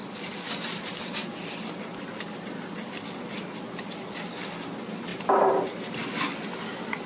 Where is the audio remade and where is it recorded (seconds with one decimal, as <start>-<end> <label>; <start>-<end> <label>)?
0.0-3.6 remade; 3.6-7.1 recorded